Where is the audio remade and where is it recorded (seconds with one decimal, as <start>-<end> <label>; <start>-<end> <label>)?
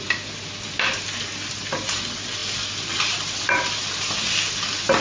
0.0-5.0 recorded